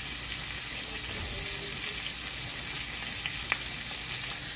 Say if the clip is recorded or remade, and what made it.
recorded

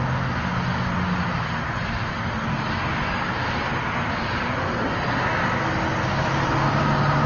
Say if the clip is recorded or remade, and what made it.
recorded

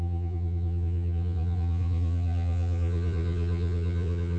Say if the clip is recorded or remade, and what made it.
remade, vocoder, Vocos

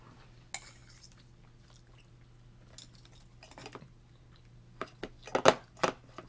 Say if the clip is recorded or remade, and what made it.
recorded